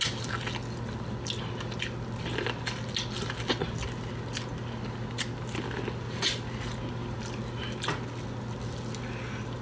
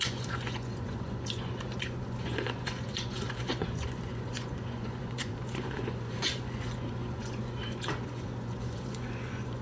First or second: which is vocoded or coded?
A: second